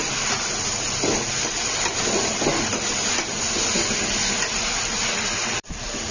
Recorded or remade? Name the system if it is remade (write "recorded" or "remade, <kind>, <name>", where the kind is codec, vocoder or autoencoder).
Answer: recorded